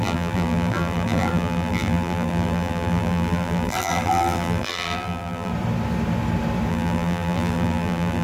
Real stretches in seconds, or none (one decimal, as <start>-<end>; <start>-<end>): 5.5-6.7